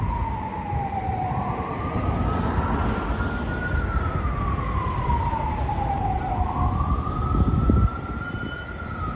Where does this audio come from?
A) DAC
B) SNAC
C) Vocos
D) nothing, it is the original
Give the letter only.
D